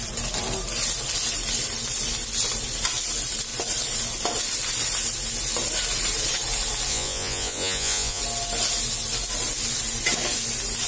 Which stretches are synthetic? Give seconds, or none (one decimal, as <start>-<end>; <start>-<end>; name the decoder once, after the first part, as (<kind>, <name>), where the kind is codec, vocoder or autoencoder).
6.9-8.2 (vocoder, Vocos)